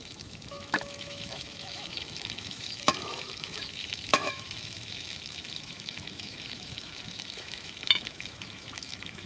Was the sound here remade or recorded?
remade